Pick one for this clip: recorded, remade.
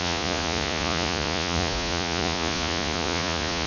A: remade